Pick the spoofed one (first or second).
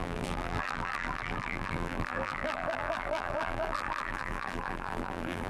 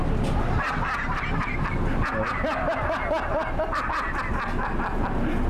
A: first